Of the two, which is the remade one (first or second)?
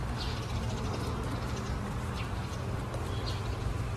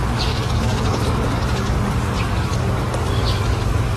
second